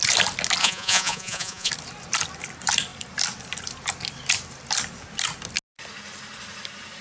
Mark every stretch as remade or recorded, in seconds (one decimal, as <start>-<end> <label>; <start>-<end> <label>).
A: 0.0-0.6 recorded; 0.6-1.7 remade; 1.7-7.0 recorded